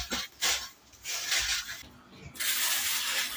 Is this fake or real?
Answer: real